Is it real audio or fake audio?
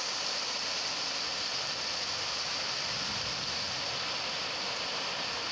real